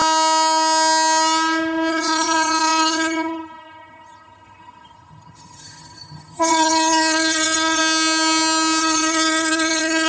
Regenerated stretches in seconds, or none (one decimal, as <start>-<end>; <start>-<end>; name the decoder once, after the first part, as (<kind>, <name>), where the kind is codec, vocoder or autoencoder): 1.9-7.8 (vocoder, HiFi-GAN); 8.8-10.1